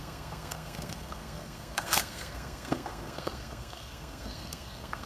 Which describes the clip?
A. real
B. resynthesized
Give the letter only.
B